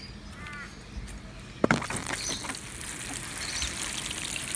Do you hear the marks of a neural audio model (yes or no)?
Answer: no